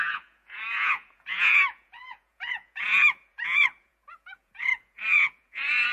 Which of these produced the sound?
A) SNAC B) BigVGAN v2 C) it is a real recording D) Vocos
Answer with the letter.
D